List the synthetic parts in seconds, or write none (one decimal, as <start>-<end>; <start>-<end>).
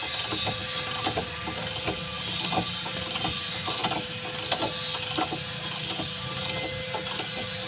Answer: none